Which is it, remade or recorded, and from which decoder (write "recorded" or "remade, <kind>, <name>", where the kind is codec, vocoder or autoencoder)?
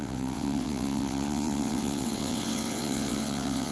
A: remade, vocoder, WaveNeXt